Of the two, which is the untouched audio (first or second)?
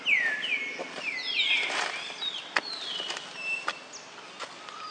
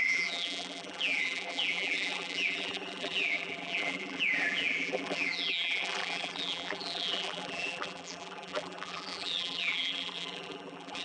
first